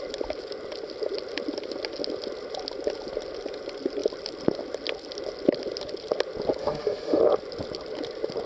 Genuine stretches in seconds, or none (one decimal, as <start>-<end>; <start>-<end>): 0.0-6.6; 7.2-8.5